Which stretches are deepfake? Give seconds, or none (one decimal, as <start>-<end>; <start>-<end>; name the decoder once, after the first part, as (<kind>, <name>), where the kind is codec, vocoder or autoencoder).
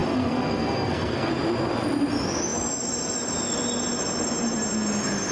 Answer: 0.0-1.3 (codec, SNAC)